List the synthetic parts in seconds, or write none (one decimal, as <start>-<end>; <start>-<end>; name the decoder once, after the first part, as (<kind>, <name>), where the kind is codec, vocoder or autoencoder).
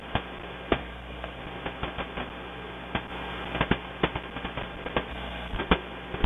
0.8-1.4 (codec, SNAC); 5.1-5.6